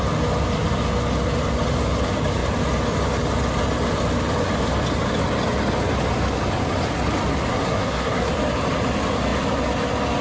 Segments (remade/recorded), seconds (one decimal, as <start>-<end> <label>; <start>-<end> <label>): 0.0-7.5 recorded; 7.5-8.3 remade; 8.3-10.2 recorded

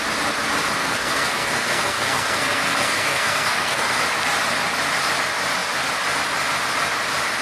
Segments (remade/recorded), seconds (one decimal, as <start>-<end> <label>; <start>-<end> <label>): 0.0-0.8 recorded; 0.8-4.0 remade; 4.0-7.4 recorded